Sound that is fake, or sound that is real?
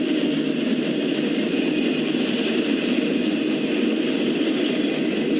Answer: real